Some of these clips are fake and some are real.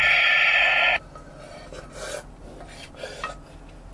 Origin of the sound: real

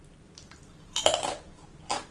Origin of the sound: fake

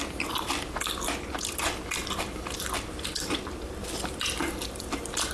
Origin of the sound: fake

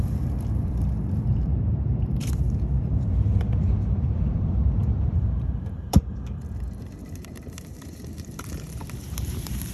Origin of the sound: fake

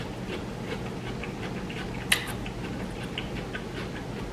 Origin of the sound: real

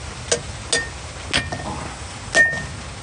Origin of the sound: real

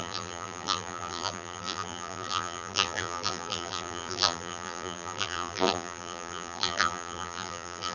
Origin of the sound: fake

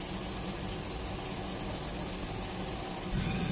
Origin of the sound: real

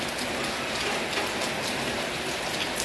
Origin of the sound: real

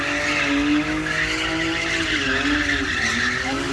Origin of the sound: real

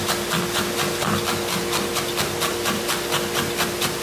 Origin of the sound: real